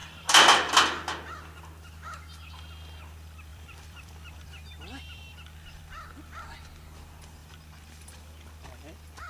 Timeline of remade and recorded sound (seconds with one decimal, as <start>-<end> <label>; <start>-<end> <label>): 0.0-0.7 remade; 0.7-3.5 recorded; 3.5-5.8 remade; 5.8-9.3 recorded